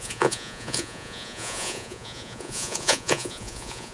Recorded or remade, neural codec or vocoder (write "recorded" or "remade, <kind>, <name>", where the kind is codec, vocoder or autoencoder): remade, vocoder, Vocos